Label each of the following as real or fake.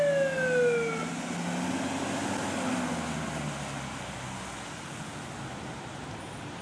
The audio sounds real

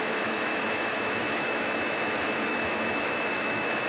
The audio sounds fake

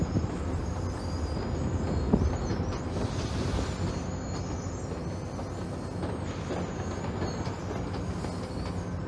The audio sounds real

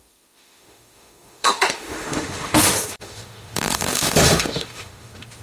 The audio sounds fake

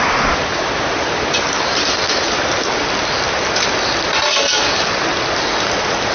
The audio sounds real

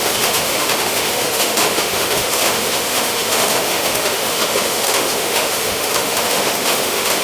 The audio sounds fake